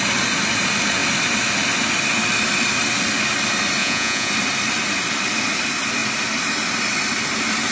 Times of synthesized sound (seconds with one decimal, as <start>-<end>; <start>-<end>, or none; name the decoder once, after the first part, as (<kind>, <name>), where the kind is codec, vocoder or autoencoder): 3.8-4.3 (vocoder, Vocos)